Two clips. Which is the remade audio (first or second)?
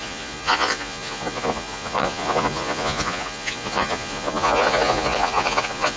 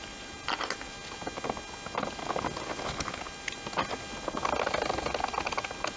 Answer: first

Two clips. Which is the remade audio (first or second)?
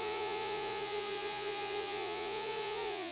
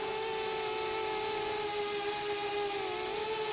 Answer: first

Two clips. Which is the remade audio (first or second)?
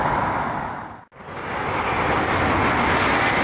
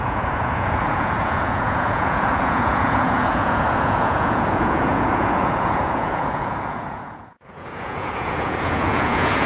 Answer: second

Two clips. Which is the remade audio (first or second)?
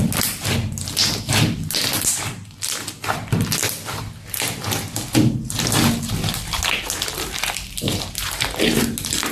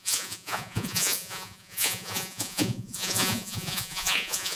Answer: second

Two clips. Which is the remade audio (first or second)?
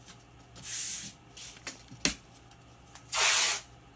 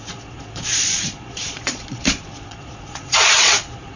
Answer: second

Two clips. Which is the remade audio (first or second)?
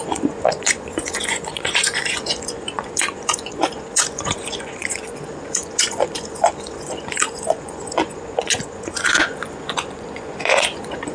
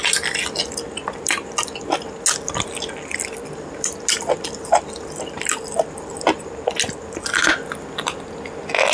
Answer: first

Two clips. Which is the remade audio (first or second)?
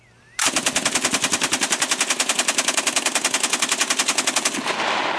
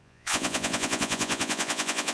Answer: second